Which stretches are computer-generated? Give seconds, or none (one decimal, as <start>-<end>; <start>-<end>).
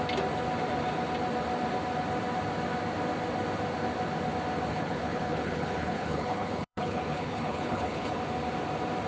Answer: 4.7-8.2